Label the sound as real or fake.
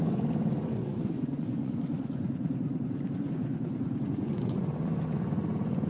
fake